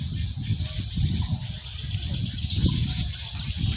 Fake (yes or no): no